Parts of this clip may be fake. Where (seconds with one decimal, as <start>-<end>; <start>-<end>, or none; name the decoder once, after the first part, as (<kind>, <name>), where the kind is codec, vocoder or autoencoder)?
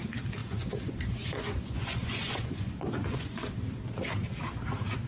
0.4-3.5 (vocoder, Vocos)